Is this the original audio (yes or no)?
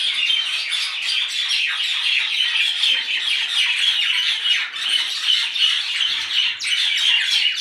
yes